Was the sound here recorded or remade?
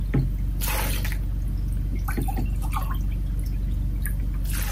recorded